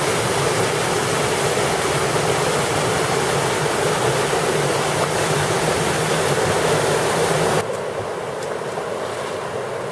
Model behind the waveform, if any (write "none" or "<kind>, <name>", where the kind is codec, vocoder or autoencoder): none